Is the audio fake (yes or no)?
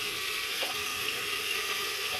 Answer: yes